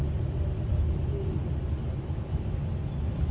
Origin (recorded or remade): recorded